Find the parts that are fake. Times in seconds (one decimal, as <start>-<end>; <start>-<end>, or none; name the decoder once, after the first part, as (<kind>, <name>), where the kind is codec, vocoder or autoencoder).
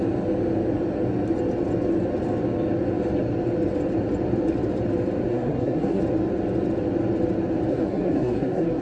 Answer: 5.3-6.0 (codec, SNAC); 7.7-8.8